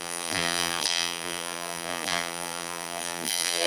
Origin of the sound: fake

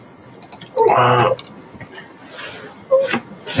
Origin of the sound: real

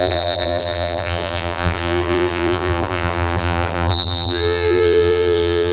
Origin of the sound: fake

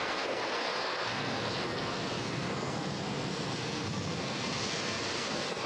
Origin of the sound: fake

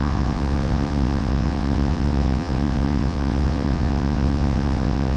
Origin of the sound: fake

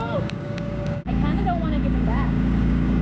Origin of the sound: fake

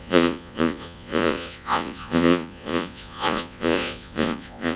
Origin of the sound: fake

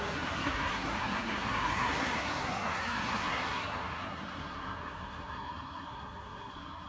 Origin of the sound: fake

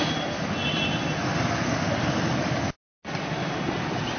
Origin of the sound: real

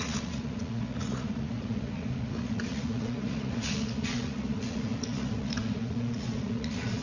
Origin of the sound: fake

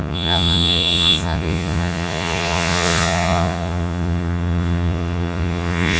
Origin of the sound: fake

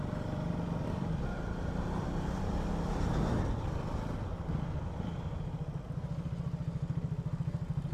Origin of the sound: real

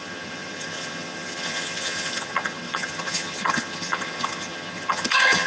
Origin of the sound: fake